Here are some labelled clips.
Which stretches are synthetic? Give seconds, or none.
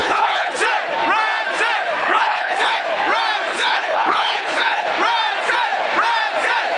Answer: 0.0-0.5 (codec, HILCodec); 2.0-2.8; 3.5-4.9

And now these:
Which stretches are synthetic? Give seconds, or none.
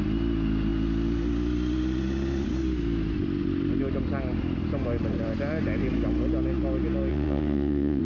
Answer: 7.1-8.0 (vocoder, WaveNeXt)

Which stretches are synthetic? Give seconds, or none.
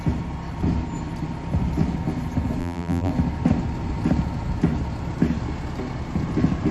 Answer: 2.6-3.1 (vocoder, BigVGAN v2)